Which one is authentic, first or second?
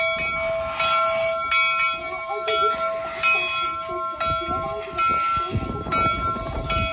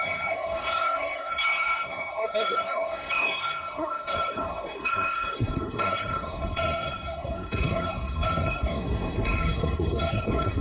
first